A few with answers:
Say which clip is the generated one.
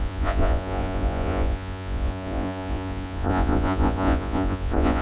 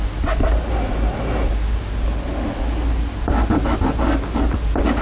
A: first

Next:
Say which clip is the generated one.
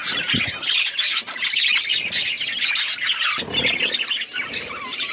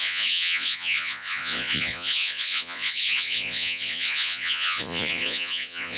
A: second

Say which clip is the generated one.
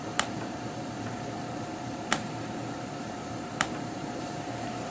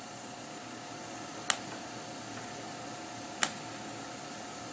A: first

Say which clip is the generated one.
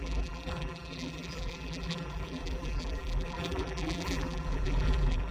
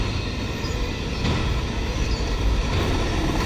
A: first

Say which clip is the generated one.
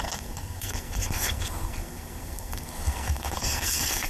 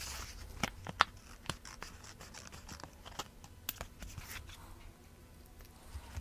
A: first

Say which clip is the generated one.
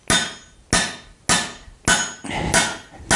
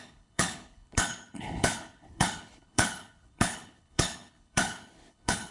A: second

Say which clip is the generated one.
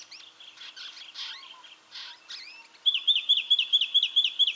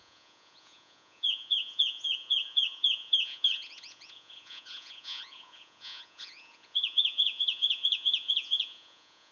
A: second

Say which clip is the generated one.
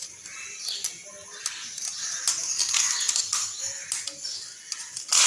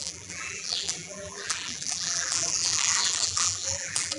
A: second